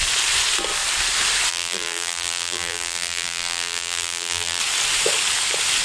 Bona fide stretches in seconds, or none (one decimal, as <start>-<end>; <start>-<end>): 0.0-1.5; 4.6-5.8

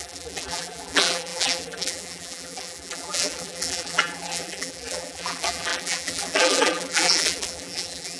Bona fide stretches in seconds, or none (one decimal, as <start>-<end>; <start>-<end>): none